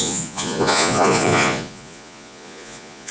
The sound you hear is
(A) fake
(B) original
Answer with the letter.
A